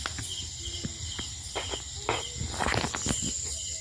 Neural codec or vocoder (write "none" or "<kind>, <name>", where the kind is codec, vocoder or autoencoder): none